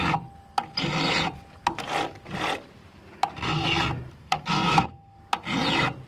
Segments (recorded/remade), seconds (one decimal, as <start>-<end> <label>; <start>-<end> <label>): 0.0-4.2 recorded; 4.2-5.2 remade; 5.2-6.1 recorded